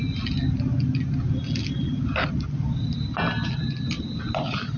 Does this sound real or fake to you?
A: real